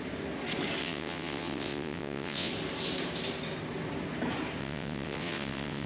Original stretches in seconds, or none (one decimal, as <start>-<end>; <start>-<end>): 0.0-0.8; 2.5-4.6